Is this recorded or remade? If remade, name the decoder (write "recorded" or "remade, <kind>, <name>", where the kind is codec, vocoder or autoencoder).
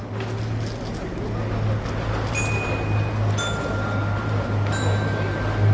recorded